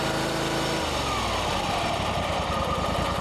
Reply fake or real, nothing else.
real